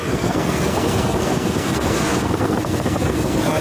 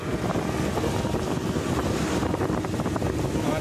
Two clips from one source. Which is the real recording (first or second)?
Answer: second